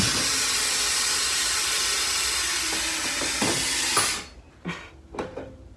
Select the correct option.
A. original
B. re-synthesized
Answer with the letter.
A